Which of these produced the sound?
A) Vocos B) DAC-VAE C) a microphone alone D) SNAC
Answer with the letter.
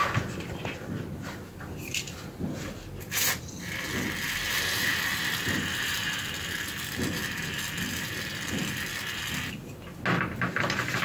C